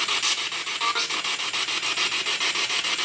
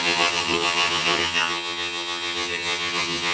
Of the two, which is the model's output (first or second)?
second